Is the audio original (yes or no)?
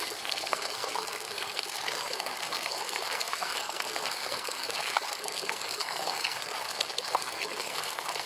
no